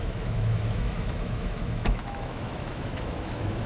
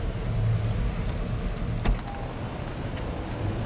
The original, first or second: second